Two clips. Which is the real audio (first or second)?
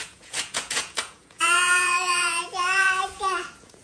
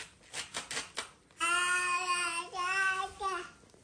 second